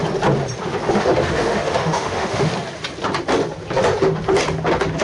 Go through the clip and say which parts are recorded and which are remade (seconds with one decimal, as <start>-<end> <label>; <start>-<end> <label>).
0.0-1.0 recorded; 1.0-2.5 remade; 2.5-5.0 recorded